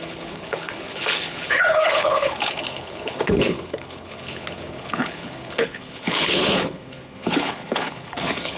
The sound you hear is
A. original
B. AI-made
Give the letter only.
B